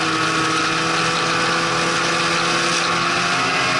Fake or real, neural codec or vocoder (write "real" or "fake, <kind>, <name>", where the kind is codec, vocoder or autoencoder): real